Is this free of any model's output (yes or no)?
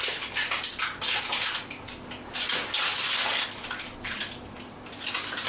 yes